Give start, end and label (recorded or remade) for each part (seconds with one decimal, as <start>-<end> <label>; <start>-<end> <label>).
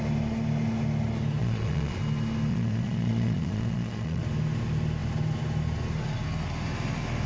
0.0-1.4 recorded; 1.4-2.0 remade; 2.0-2.5 recorded; 2.5-4.2 remade; 4.2-7.3 recorded